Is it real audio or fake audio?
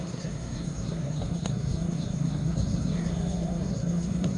fake